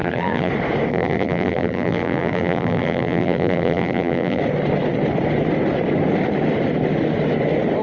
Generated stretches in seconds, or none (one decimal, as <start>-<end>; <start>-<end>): 0.0-0.5; 0.9-4.4